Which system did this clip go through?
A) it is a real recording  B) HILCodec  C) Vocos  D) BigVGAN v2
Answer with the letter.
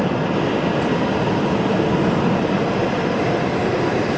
A